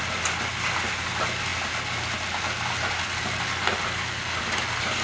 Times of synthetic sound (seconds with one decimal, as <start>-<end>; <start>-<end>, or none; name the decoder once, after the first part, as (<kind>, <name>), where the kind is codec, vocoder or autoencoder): none